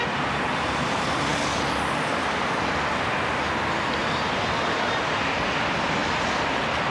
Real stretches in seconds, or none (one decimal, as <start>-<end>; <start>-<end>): 1.3-4.0; 6.0-6.9